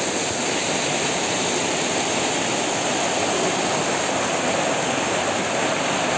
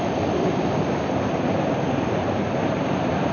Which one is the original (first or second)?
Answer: first